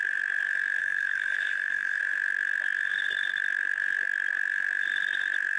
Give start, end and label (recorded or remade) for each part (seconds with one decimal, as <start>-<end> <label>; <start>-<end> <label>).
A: 0.0-0.8 recorded; 0.8-2.0 remade; 2.0-5.6 recorded